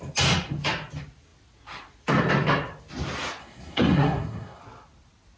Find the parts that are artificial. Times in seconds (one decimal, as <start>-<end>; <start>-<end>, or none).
3.4-4.6